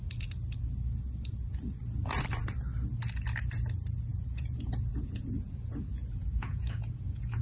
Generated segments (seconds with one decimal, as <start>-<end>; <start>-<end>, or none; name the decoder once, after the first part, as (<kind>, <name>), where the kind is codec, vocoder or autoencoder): 4.1-7.4 (vocoder, Vocos)